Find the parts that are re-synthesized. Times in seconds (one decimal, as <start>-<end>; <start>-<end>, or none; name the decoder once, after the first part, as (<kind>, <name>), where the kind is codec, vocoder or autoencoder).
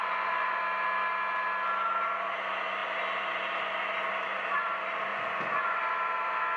0.0-0.6 (vocoder, Vocos); 5.1-5.8